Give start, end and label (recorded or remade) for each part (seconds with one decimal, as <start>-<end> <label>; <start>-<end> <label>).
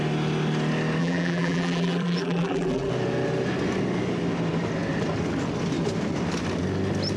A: 0.0-1.0 recorded; 1.0-2.9 remade; 2.9-7.2 recorded